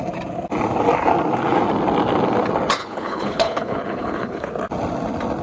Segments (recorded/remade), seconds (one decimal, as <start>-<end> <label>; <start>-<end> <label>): 0.0-2.8 recorded; 2.8-4.5 remade; 4.5-5.4 recorded